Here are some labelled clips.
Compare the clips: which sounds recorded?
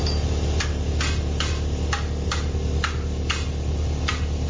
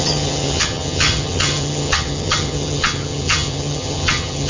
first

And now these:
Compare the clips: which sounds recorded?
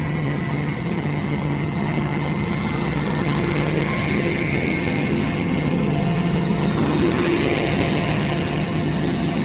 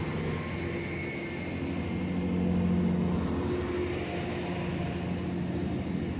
second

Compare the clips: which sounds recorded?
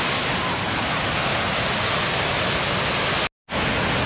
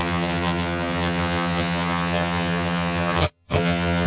first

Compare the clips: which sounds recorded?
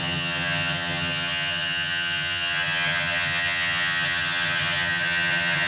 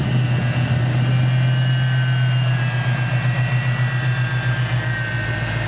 second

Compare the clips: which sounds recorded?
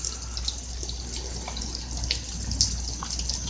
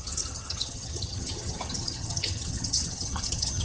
first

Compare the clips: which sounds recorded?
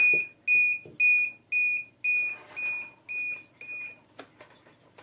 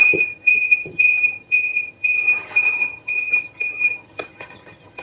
first